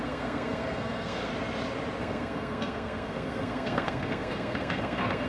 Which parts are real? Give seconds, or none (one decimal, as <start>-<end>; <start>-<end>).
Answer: 1.3-2.0